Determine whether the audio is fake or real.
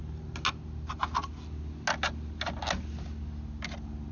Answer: real